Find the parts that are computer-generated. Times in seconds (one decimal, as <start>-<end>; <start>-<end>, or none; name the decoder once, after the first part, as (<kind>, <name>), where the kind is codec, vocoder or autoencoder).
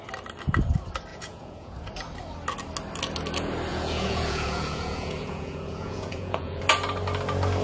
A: 1.1-1.9 (vocoder, Vocos); 3.7-6.6